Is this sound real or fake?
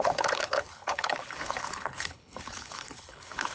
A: fake